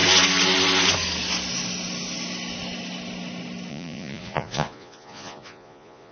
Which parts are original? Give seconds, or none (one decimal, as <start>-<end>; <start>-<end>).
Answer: 0.0-3.7